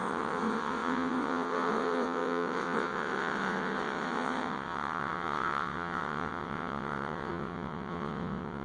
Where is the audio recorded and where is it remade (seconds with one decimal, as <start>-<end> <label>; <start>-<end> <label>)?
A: 0.0-8.6 remade